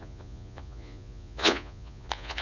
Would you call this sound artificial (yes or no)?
yes